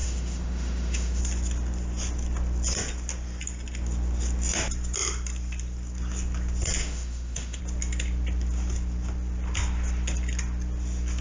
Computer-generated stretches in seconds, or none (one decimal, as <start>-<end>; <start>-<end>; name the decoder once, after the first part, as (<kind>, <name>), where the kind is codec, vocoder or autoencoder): 0.0-1.2 (autoencoder, DAC-VAE); 6.8-7.6

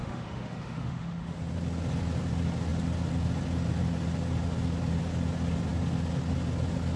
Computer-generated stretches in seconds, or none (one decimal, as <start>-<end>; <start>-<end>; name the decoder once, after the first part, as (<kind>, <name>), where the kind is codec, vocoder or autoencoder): 0.0-1.4 (autoencoder, DAC-VAE)

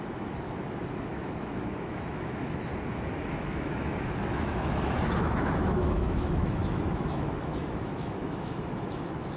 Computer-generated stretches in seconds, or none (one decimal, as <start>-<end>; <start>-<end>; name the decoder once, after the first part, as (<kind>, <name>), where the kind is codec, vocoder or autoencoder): 0.0-2.7 (autoencoder, DAC-VAE); 3.3-9.4

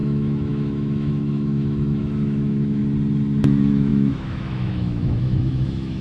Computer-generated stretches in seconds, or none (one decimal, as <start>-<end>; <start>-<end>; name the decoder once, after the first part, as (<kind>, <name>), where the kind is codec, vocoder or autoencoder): 0.0-2.8 (autoencoder, DAC-VAE); 3.4-6.0

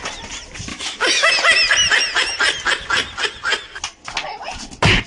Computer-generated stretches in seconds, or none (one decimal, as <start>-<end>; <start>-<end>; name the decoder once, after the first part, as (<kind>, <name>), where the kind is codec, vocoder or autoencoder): 0.7-1.3 (autoencoder, DAC-VAE)

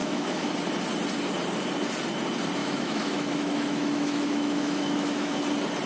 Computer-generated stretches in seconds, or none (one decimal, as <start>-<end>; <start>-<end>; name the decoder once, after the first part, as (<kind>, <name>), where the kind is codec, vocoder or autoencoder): 0.0-0.5 (autoencoder, DAC-VAE); 2.6-5.4